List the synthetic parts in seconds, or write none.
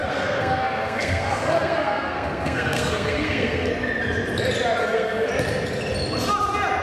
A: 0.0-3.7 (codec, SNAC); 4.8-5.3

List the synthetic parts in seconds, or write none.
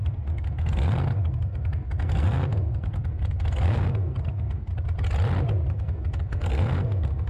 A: 0.0-4.7 (codec, SNAC); 5.7-7.3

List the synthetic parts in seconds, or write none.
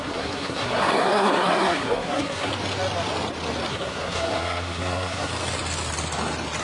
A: 0.0-2.5 (codec, SNAC); 3.7-5.3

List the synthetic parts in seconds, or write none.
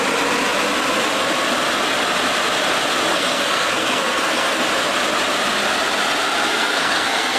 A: 3.1-4.6 (codec, SNAC); 6.5-7.4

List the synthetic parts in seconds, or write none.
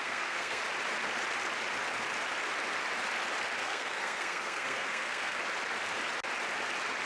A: 0.0-0.6 (codec, SNAC); 3.6-5.4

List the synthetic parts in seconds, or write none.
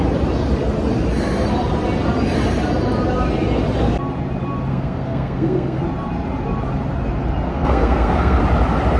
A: 4.7-5.8 (codec, SNAC); 7.5-8.4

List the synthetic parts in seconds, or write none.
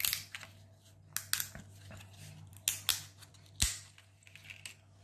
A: none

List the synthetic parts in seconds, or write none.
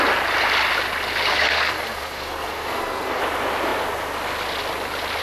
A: 1.3-3.2 (codec, SNAC)